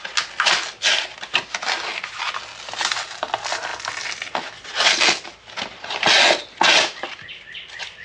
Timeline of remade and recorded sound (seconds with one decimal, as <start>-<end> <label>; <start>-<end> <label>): 0.0-8.0 recorded